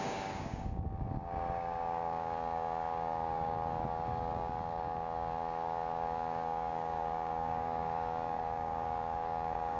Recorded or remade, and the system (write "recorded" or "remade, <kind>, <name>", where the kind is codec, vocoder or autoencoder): remade, codec, DAC